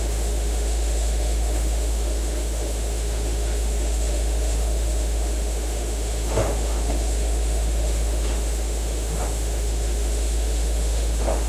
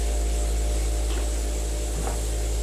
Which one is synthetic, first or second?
first